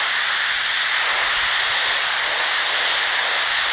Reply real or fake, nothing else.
real